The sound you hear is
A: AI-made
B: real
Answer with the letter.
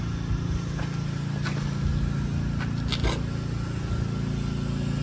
B